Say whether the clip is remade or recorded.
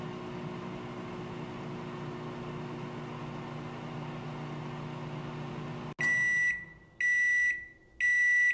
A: recorded